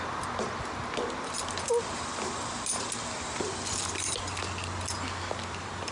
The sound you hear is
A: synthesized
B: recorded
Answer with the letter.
B